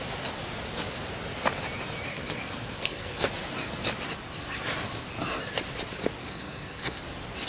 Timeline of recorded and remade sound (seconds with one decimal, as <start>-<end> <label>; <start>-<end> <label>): 0.0-2.1 recorded; 2.1-3.3 remade; 3.3-6.2 recorded; 6.2-7.0 remade; 7.0-7.5 recorded